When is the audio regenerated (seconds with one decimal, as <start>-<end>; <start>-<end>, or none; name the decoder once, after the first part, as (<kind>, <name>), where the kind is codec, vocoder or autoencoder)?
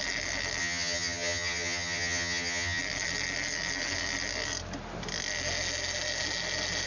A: 0.6-2.8 (vocoder, HiFi-GAN)